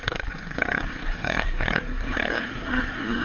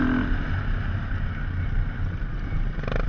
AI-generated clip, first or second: first